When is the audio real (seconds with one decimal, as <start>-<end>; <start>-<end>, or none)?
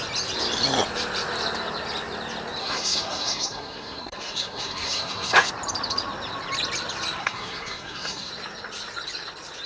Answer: 0.0-2.6; 5.5-7.2; 8.3-9.7